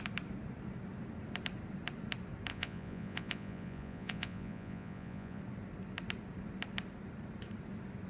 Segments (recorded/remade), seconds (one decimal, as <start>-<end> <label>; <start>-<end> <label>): 0.0-2.5 recorded; 2.5-5.4 remade; 5.4-8.1 recorded